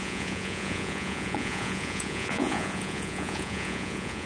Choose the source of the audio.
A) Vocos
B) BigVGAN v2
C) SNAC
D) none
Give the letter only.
A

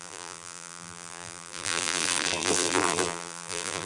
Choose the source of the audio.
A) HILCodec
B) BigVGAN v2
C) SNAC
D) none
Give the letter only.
B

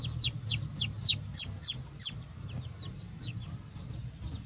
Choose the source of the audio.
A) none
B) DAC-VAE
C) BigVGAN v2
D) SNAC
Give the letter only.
A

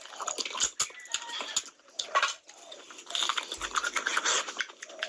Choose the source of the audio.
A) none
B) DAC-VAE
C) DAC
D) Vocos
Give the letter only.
A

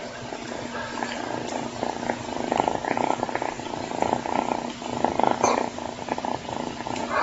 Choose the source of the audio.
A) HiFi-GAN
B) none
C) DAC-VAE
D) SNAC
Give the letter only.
B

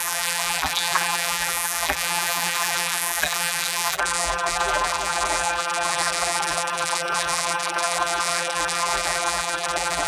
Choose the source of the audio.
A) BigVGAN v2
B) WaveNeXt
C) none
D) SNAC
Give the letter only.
A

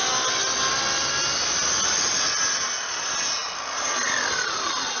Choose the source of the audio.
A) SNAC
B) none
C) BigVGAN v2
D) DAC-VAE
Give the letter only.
B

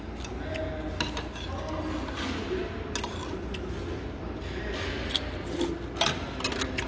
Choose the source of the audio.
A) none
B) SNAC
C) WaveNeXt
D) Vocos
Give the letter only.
A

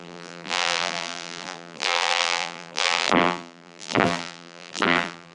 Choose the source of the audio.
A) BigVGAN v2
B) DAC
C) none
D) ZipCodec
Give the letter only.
A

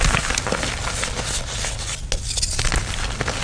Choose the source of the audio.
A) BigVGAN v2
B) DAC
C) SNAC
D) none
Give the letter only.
D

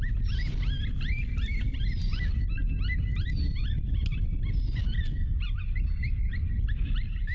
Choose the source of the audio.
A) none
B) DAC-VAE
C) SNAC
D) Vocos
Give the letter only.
A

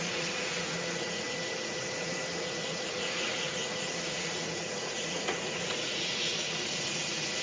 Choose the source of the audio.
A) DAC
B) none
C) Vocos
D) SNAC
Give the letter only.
C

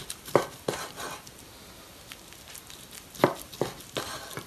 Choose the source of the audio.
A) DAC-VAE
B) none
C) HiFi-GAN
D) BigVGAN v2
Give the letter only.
B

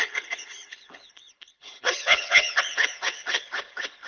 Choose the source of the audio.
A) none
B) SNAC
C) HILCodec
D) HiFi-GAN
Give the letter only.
C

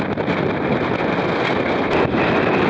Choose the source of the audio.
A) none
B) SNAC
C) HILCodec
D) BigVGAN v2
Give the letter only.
A